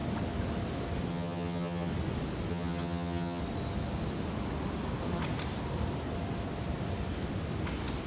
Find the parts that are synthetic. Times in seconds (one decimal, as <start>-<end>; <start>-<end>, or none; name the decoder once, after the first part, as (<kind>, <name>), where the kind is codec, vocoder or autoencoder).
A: 1.1-1.9 (vocoder, HiFi-GAN); 2.5-3.4